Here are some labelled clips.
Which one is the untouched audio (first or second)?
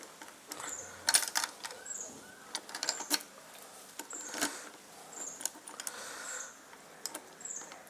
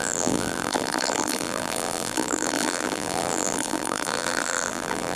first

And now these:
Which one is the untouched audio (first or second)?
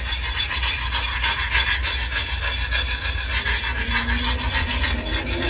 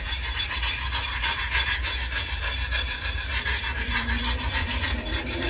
first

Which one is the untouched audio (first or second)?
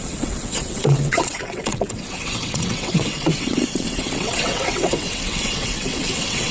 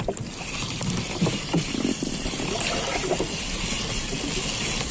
second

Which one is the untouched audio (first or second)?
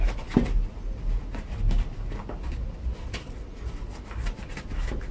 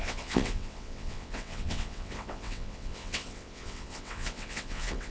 first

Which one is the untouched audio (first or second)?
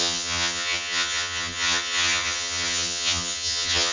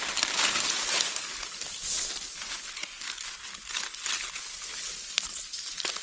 second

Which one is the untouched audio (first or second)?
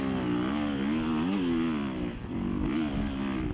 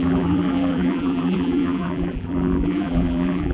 first